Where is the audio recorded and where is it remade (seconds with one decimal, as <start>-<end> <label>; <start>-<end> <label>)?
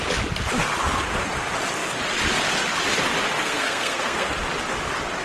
0.0-3.4 recorded; 3.4-4.3 remade; 4.3-5.2 recorded